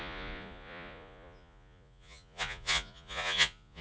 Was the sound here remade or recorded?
remade